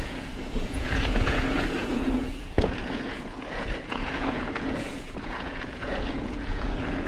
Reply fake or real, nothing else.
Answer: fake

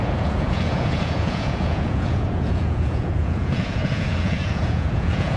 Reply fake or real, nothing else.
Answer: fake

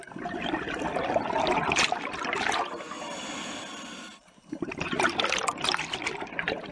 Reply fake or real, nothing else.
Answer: real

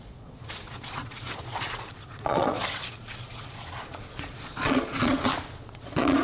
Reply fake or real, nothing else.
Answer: fake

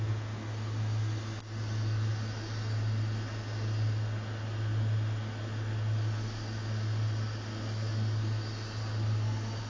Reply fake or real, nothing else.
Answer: real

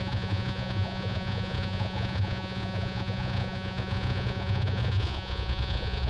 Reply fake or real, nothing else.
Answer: fake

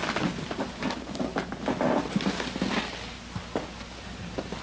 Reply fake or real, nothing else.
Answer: real